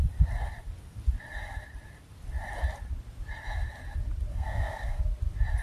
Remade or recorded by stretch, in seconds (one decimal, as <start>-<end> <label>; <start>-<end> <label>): 0.0-4.3 recorded; 4.3-5.0 remade; 5.0-5.6 recorded